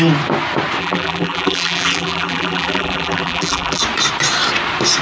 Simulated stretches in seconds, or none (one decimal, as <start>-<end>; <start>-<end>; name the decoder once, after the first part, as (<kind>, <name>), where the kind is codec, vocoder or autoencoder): 0.8-3.8 (vocoder, BigVGAN v2)